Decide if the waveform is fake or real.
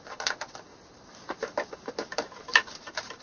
fake